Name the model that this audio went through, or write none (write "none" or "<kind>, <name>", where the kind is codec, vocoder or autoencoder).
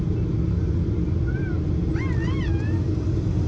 none